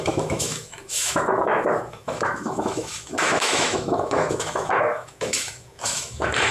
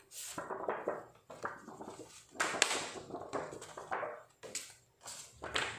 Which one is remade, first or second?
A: first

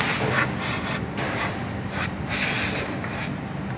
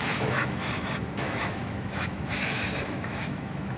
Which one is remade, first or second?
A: second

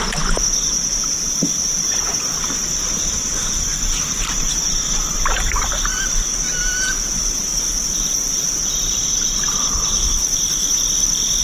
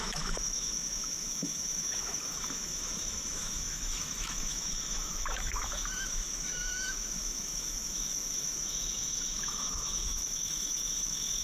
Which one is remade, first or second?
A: second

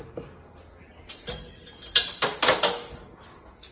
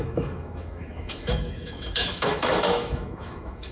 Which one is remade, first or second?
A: second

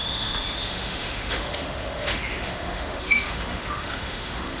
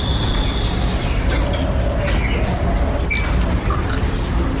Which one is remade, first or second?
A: first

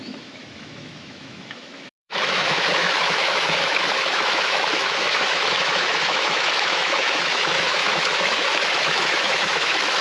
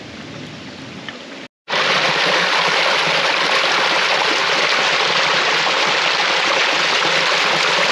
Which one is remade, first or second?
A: first